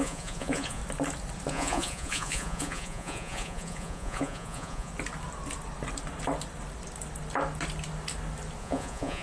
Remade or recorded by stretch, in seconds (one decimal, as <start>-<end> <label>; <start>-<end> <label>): 0.0-0.8 remade; 0.8-1.5 recorded; 1.5-4.9 remade; 4.9-8.6 recorded; 8.6-9.2 remade

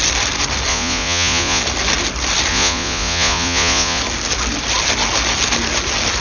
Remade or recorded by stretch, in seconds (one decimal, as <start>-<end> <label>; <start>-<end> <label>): 0.0-0.7 recorded; 0.7-1.6 remade; 1.6-2.5 recorded; 2.5-4.0 remade; 4.0-6.2 recorded

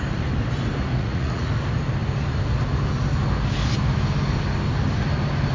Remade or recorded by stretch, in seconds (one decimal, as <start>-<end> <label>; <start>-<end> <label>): 0.0-0.9 recorded; 0.9-1.5 remade; 1.5-5.5 recorded

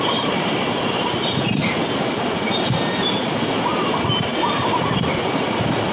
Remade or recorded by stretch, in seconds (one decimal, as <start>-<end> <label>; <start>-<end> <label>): 0.0-5.9 recorded

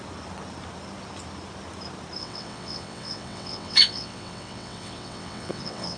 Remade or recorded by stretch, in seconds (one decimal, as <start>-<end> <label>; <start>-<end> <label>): 0.0-2.2 recorded; 2.2-6.0 remade

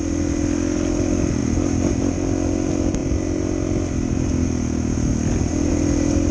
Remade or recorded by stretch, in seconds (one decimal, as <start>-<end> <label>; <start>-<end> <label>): 0.0-6.3 recorded

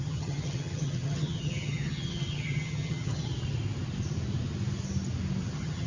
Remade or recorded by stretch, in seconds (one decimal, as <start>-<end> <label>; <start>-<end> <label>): 0.0-3.3 remade; 3.3-5.4 recorded; 5.4-5.9 remade

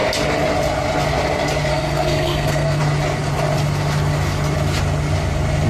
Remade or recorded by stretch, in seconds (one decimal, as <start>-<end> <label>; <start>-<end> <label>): 0.0-1.7 recorded; 1.7-2.8 remade; 2.8-5.7 recorded